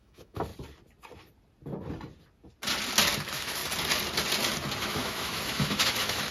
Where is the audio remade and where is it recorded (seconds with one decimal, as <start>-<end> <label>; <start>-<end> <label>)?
0.0-0.5 remade; 0.5-3.2 recorded; 3.2-3.6 remade; 3.6-4.8 recorded; 4.8-6.3 remade